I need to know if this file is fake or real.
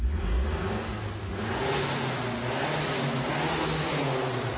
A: real